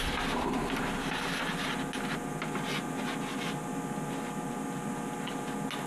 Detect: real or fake real